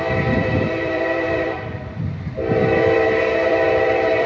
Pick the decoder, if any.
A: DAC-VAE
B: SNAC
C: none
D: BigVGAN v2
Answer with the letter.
D